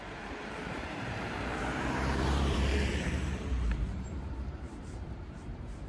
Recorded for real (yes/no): no